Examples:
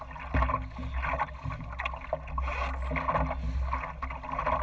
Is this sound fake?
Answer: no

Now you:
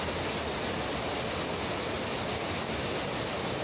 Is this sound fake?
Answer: no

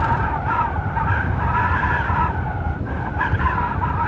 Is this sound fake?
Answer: yes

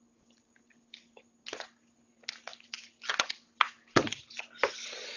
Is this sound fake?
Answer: no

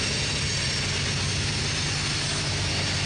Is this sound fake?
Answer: no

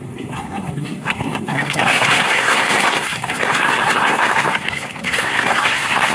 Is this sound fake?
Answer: yes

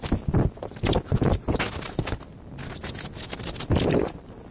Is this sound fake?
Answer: no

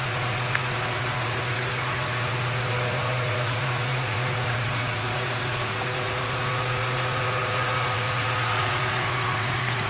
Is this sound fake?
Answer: yes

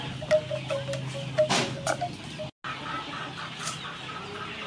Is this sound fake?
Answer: no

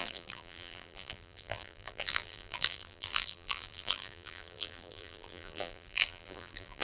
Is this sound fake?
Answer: yes